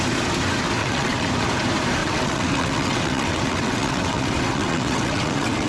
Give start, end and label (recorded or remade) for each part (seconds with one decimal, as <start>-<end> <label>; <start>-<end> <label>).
0.0-0.8 recorded; 0.8-1.3 remade; 1.3-2.0 recorded; 2.0-5.7 remade